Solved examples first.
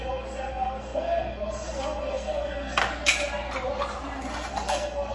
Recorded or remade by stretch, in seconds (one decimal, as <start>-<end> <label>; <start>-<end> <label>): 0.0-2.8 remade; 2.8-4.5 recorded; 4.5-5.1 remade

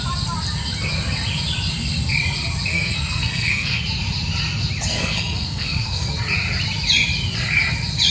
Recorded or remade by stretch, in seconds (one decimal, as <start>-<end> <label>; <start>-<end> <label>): 0.0-2.7 recorded; 2.7-3.8 remade; 3.8-4.9 recorded; 4.9-6.1 remade; 6.1-8.1 recorded

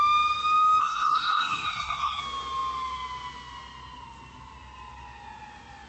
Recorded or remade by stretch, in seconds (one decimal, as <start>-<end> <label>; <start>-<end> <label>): 0.0-0.8 recorded; 0.8-2.2 remade; 2.2-5.9 recorded